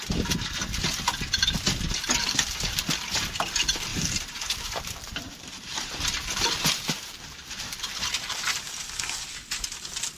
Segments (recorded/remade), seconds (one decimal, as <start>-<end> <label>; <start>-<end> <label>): 0.0-2.2 recorded; 2.2-2.9 remade; 2.9-3.9 recorded; 3.9-8.8 remade; 8.8-10.2 recorded